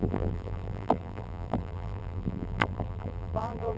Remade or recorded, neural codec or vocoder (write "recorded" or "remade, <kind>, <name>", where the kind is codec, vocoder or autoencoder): remade, vocoder, BigVGAN v2